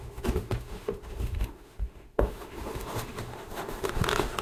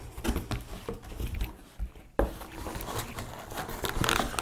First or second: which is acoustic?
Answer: second